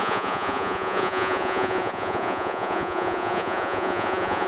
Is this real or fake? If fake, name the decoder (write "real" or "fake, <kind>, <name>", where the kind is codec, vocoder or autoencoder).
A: fake, vocoder, Vocos